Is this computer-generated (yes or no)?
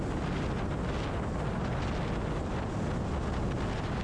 no